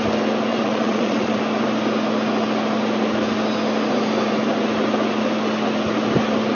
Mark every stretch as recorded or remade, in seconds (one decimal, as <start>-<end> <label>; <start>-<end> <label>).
0.0-0.5 recorded; 0.5-1.4 remade; 1.4-6.5 recorded